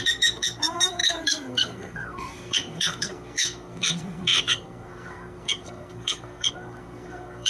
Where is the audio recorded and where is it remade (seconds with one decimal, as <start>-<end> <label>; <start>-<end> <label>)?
0.0-7.5 remade

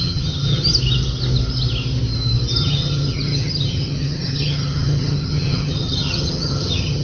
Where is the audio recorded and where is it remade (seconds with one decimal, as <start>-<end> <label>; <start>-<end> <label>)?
0.0-0.7 remade; 0.7-2.6 recorded; 2.6-7.0 remade